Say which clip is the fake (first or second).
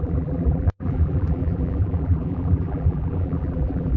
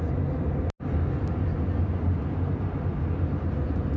first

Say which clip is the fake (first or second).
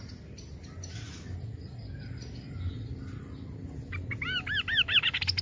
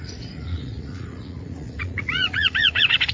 second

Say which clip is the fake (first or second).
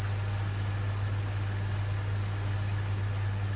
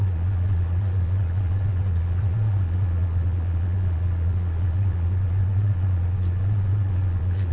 second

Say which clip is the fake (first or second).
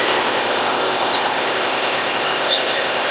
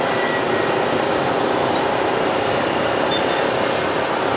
first